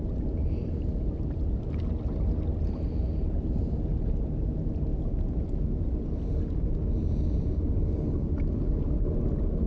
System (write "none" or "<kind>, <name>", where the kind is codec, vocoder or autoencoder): none